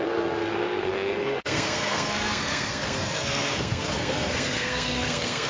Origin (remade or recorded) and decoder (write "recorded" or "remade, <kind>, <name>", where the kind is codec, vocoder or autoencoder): remade, codec, SNAC